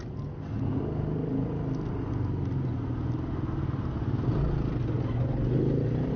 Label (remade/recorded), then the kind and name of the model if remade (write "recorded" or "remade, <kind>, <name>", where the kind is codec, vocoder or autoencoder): recorded